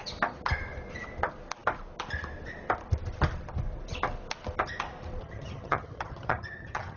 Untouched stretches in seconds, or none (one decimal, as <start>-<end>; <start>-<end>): 0.0-5.2